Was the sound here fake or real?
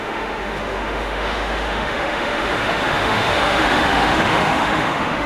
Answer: fake